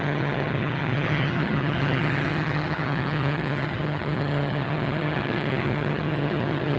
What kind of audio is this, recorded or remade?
remade